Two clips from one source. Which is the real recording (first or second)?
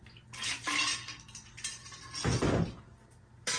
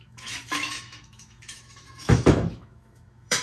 first